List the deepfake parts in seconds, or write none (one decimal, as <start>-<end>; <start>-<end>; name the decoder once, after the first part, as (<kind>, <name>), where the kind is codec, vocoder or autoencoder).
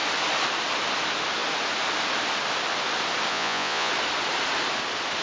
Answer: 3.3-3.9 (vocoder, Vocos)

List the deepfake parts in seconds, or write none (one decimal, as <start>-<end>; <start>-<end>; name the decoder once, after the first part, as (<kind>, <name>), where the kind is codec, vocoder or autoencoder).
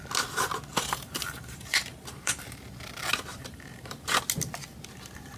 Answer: 0.7-2.6 (vocoder, BigVGAN v2); 3.3-4.2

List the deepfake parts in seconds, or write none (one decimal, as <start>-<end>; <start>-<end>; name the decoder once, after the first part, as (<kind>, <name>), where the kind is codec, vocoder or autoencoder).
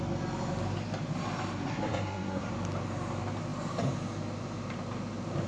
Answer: 1.7-2.5 (codec, SNAC)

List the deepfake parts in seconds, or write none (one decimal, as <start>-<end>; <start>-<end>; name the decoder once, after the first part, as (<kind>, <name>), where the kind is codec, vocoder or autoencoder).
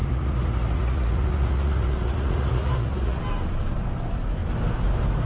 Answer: 0.0-3.2 (vocoder, Vocos)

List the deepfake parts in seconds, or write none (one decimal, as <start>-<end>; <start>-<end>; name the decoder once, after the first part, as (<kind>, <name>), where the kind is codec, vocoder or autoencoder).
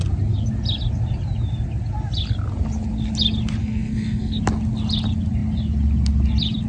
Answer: 3.6-4.4 (codec, SNAC)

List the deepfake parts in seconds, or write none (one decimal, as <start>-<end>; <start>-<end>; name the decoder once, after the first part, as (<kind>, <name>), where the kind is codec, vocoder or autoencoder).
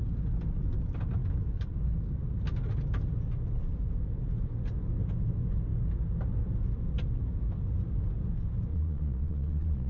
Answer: 8.7-9.9 (vocoder, Vocos)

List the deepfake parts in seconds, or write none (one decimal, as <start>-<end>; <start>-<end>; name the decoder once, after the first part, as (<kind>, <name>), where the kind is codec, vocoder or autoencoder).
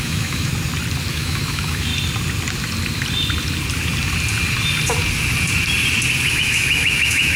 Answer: 0.0-0.5 (autoencoder, DAC-VAE); 1.1-1.9; 6.3-7.4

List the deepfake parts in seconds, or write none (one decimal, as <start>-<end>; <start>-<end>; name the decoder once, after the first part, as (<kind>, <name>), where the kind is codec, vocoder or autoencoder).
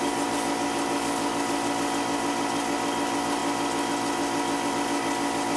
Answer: 0.0-3.4 (vocoder, BigVGAN v2); 4.7-5.6